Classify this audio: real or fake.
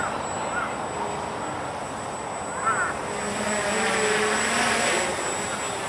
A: real